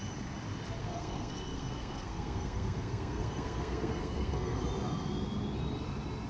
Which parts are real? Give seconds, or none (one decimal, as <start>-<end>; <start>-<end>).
0.0-0.8; 4.6-6.3